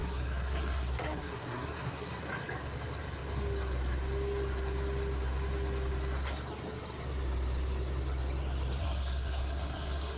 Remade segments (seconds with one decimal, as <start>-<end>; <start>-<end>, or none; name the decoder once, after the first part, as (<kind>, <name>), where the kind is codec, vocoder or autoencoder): 0.0-2.2 (codec, SNAC); 8.8-10.2